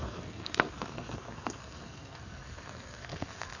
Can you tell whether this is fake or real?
fake